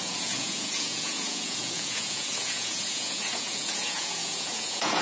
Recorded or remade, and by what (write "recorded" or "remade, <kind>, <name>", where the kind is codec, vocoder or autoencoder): remade, vocoder, Vocos